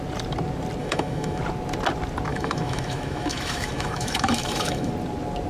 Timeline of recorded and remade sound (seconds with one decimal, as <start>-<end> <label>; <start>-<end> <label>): 0.0-0.8 recorded; 0.8-1.4 remade; 1.4-2.3 recorded; 2.3-4.9 remade; 4.9-5.5 recorded